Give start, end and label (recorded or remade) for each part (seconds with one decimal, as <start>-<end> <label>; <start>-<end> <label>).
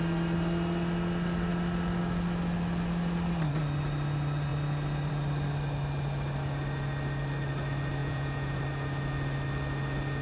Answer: 0.0-8.0 recorded; 8.0-8.6 remade; 8.6-10.2 recorded